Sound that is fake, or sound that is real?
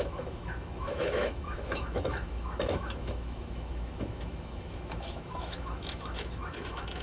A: fake